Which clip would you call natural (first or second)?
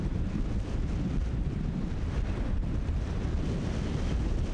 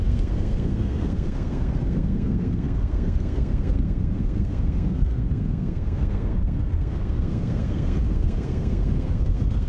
first